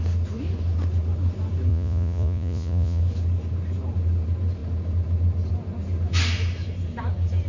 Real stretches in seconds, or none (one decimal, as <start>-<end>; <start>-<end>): 0.0-1.7; 3.0-7.5